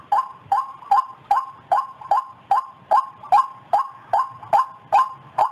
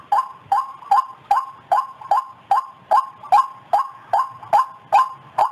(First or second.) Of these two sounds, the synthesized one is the first